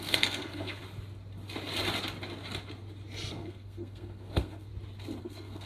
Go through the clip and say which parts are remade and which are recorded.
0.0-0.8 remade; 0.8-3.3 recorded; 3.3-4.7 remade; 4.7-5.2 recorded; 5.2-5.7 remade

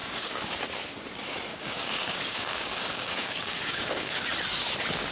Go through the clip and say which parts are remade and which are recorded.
0.0-0.6 remade; 0.6-1.5 recorded; 1.5-4.3 remade; 4.3-5.1 recorded

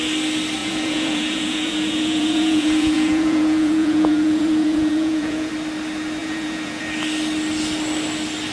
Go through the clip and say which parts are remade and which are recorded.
0.0-0.6 recorded; 0.6-5.5 remade; 5.5-6.2 recorded; 6.2-6.8 remade; 6.8-8.5 recorded

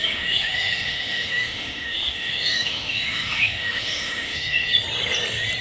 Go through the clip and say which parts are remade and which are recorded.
0.0-4.7 remade; 4.7-5.6 recorded

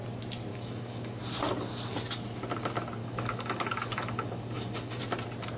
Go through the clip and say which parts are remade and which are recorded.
0.0-0.5 recorded; 0.5-1.2 remade; 1.2-3.0 recorded; 3.0-5.0 remade; 5.0-5.6 recorded

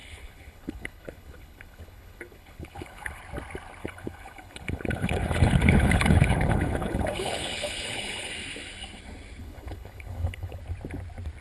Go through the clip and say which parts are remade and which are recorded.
0.0-3.2 remade; 3.2-3.8 recorded; 3.8-8.3 remade; 8.3-9.4 recorded; 9.4-10.6 remade; 10.6-11.4 recorded

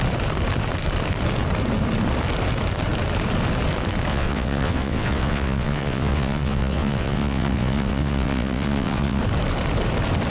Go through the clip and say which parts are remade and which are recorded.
0.0-4.1 recorded; 4.1-9.2 remade; 9.2-10.3 recorded

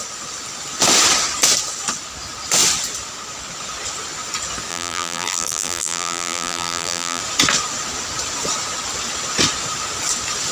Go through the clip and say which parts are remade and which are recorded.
0.0-4.7 recorded; 4.7-7.2 remade; 7.2-10.5 recorded